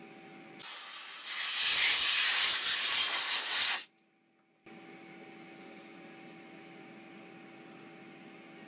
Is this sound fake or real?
real